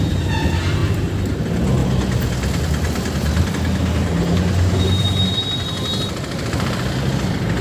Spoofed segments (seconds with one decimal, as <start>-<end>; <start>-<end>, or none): 1.8-3.5; 5.0-6.8